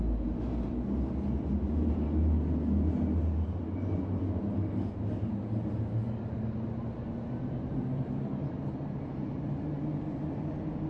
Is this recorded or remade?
recorded